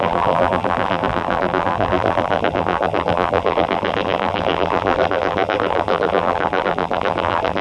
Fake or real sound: fake